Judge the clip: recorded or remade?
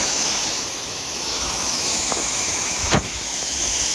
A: remade